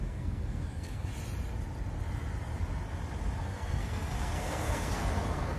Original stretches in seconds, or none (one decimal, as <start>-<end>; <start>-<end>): 1.1-3.4